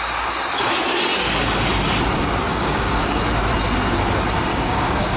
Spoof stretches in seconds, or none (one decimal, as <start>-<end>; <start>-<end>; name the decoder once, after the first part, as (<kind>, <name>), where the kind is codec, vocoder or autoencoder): 2.5-3.2 (codec, DAC); 4.5-5.2